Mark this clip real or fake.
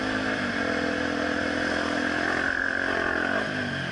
real